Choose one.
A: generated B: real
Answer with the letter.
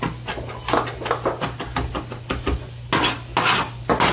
B